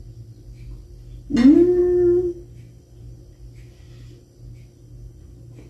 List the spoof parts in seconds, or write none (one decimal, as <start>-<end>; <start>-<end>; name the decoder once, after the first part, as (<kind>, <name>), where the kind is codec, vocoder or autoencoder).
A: none